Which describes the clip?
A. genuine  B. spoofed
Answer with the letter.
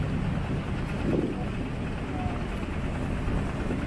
A